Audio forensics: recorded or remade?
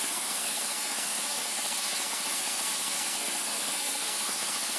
remade